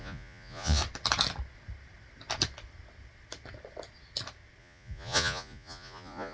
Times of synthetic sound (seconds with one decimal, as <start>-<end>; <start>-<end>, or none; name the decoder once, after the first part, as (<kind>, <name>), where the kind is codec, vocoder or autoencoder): 0.0-0.8 (vocoder, Vocos); 4.6-6.3